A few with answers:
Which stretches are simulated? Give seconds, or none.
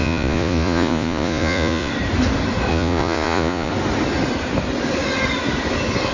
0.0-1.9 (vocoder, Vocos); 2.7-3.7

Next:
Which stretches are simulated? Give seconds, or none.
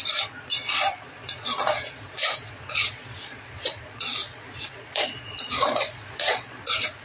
0.0-7.0 (vocoder, Vocos)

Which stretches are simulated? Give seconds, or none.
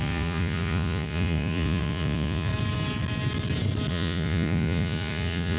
0.0-2.5 (vocoder, Vocos); 3.9-5.6